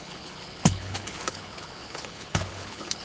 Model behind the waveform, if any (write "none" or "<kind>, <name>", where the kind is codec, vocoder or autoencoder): codec, HILCodec